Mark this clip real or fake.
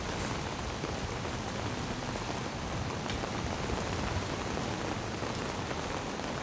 real